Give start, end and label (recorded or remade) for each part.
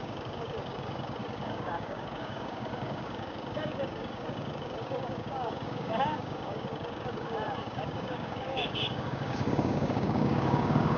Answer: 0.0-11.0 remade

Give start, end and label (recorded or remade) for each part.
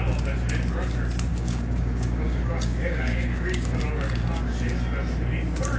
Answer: 0.0-1.3 recorded; 1.3-3.8 remade; 3.8-5.8 recorded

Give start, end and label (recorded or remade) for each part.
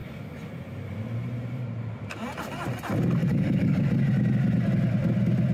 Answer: 0.0-3.2 recorded; 3.2-3.9 remade; 3.9-5.5 recorded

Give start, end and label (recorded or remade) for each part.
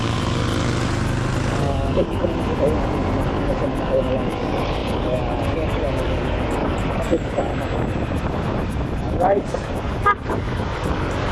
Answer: 0.0-0.5 remade; 0.5-1.6 recorded; 1.6-2.2 remade; 2.2-3.4 recorded; 3.4-7.5 remade; 7.5-9.0 recorded; 9.0-11.3 remade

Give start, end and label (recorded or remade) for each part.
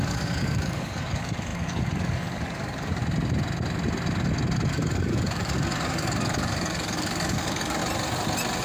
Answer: 0.0-3.0 remade; 3.0-4.7 recorded; 4.7-7.8 remade; 7.8-8.6 recorded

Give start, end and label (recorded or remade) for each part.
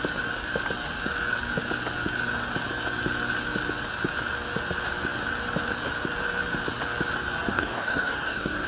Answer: 0.0-7.5 recorded; 7.5-8.7 remade